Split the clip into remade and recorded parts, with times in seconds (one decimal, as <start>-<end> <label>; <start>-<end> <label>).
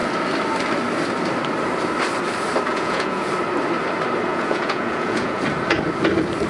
0.0-2.7 recorded; 2.7-3.3 remade; 3.3-4.3 recorded; 4.3-5.4 remade; 5.4-6.5 recorded